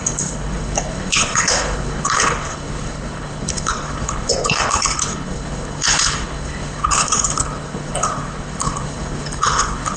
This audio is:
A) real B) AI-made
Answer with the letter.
B